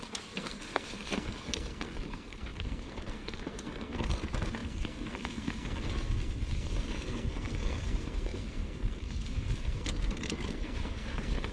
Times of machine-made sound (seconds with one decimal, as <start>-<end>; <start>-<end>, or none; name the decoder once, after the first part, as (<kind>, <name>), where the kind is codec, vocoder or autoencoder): 0.0-11.5 (codec, SNAC)